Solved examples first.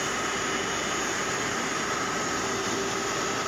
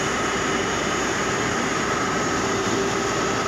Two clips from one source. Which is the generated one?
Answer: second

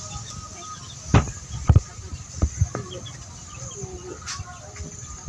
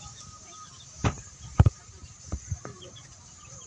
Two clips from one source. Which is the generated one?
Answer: second